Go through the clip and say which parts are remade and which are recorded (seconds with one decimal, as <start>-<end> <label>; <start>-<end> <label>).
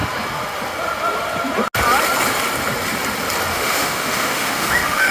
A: 0.0-3.5 recorded; 3.5-5.1 remade